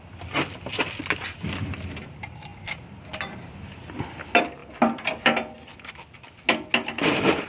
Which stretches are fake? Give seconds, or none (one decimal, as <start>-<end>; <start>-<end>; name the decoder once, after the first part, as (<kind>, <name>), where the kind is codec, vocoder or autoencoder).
none